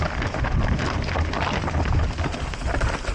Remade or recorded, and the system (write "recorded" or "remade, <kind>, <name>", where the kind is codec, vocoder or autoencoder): recorded